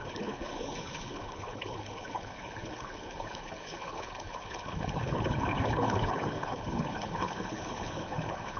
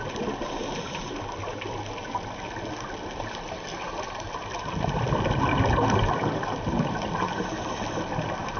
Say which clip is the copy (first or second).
first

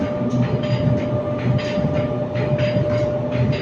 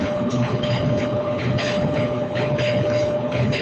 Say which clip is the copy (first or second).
second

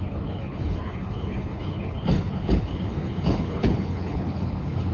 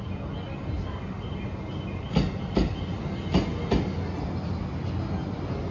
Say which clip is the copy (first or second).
first